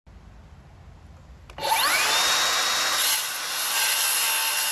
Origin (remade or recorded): recorded